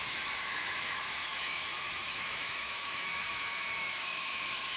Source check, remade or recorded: remade